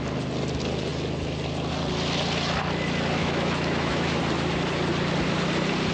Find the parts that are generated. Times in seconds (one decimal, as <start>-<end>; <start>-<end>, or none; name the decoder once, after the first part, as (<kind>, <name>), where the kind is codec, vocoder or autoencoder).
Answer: 3.2-4.2 (autoencoder, DAC-VAE)